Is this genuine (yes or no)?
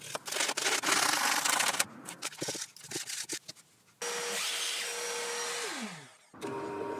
yes